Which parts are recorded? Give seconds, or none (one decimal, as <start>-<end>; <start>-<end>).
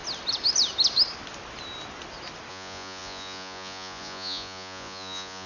0.0-2.5